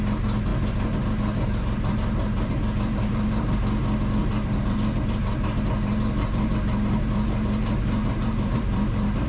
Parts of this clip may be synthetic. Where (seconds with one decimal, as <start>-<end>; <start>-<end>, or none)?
0.5-3.6; 4.2-9.3